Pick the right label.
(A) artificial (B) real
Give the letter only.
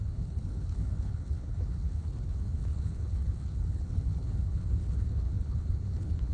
A